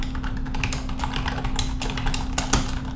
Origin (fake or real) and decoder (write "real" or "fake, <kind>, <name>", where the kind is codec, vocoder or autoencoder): real